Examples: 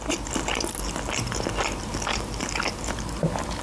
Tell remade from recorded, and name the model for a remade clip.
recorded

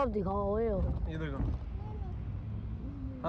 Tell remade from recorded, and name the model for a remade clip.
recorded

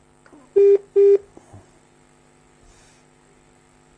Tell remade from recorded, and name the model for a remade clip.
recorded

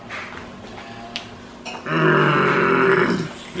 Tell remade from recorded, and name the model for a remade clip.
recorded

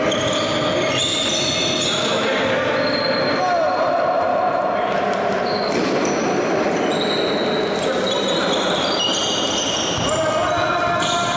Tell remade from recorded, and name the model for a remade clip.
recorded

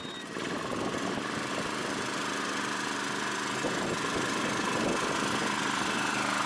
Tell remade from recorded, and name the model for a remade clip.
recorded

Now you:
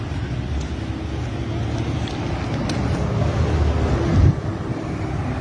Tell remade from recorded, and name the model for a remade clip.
recorded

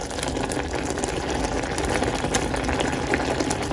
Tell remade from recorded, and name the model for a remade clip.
recorded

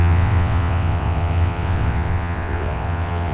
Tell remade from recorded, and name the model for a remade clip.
remade, vocoder, WaveNeXt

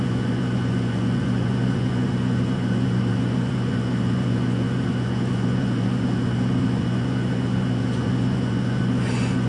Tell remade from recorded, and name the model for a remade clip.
remade, vocoder, Vocos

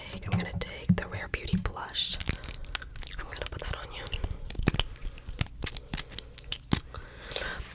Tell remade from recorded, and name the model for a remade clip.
recorded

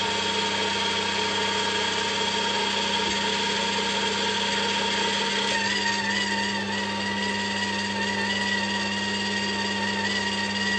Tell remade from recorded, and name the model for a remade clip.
recorded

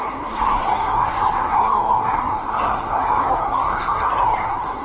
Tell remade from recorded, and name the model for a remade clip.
remade, codec, SNAC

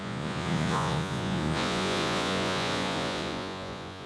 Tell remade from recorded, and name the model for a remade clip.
remade, vocoder, Vocos